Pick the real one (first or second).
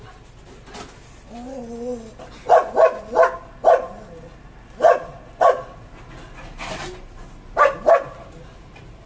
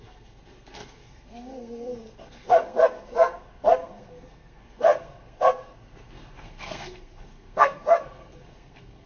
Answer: first